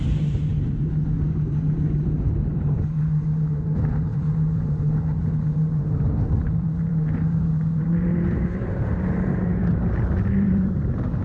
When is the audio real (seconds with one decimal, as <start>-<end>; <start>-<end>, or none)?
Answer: none

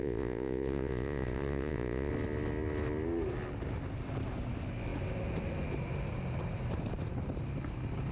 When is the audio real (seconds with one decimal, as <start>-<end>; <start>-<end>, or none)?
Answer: 2.1-8.1

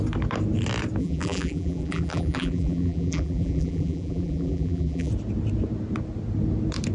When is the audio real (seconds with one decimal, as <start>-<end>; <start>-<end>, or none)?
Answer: 0.0-1.0; 5.1-6.9

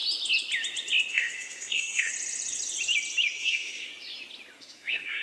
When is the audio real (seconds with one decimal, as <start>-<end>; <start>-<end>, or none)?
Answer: 0.0-1.1; 2.1-3.4; 3.9-4.6